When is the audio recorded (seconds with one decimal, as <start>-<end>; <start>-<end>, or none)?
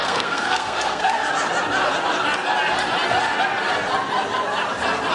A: 1.3-5.1